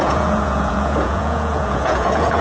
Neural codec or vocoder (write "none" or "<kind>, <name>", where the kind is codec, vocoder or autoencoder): vocoder, Vocos